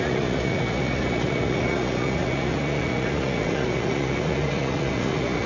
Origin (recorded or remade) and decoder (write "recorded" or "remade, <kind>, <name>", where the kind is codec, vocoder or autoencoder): remade, vocoder, Vocos